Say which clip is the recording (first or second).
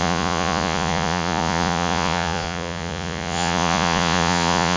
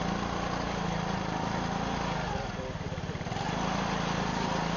second